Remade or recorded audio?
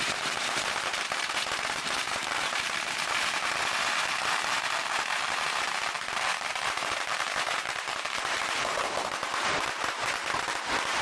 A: remade